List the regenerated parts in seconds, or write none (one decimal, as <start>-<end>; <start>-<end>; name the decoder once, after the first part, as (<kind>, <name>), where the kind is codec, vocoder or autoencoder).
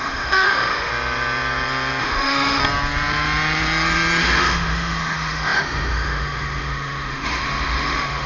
0.0-0.9 (autoencoder, DAC-VAE); 2.0-2.6; 4.2-8.3